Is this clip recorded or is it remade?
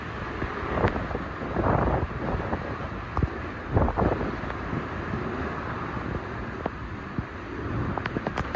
recorded